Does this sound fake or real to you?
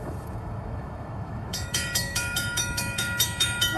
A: fake